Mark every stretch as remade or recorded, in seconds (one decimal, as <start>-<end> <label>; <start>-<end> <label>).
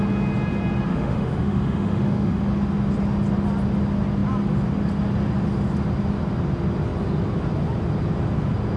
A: 0.0-0.9 recorded; 0.9-2.4 remade; 2.4-8.8 recorded